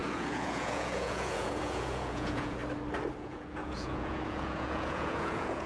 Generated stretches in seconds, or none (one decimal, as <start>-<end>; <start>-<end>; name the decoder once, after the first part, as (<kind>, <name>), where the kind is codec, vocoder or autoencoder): 0.0-2.6 (vocoder, Vocos); 3.2-5.7